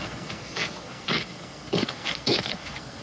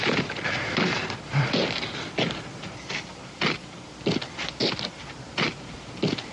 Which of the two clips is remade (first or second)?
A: first